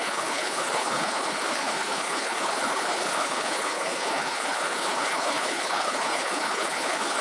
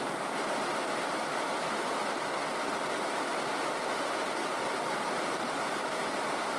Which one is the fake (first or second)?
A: first